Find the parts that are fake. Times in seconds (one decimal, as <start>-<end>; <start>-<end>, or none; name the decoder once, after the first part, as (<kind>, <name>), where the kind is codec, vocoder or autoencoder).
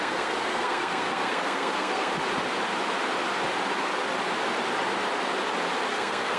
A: 0.0-2.1 (codec, SNAC); 5.9-6.4